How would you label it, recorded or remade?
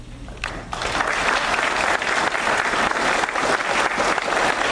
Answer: recorded